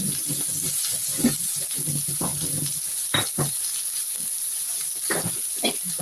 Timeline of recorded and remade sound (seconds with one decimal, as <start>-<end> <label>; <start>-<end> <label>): 0.0-6.0 recorded